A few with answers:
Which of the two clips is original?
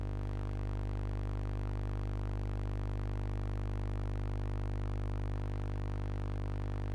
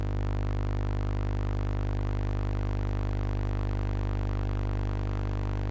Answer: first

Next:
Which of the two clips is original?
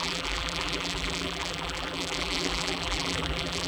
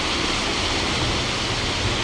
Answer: second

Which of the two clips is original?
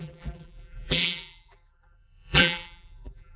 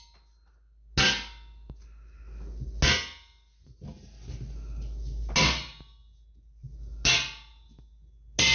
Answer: second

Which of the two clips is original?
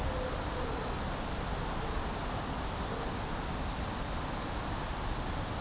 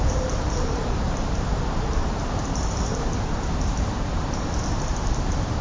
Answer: first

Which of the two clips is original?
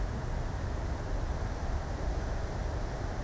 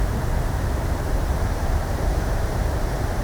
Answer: first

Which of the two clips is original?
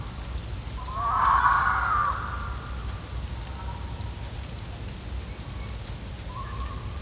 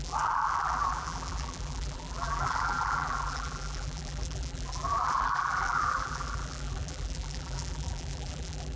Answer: first